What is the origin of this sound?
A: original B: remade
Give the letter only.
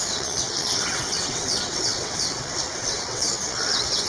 B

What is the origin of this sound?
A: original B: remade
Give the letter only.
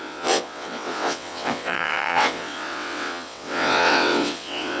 B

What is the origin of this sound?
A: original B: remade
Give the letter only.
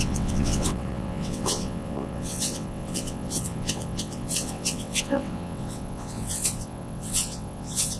B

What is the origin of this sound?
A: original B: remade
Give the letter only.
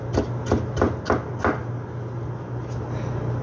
A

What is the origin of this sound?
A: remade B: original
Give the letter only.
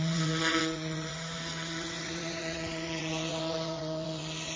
A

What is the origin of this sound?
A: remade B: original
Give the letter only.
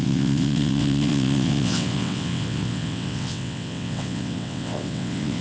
A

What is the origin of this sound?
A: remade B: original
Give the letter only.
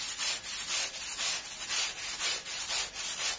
B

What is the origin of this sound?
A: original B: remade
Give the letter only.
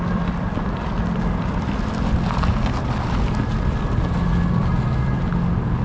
A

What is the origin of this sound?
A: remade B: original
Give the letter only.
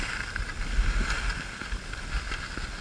B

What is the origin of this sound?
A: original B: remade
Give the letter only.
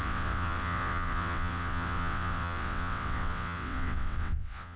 B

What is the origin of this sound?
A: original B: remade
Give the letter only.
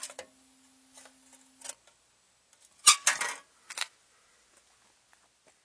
A